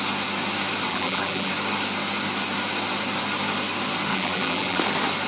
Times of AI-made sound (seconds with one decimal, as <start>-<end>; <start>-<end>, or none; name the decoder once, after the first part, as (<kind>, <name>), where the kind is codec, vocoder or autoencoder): 0.9-1.5 (vocoder, BigVGAN v2); 4.1-4.8